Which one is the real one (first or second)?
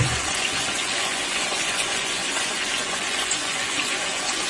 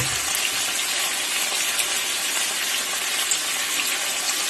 second